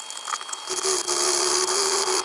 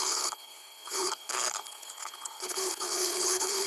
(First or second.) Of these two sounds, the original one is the first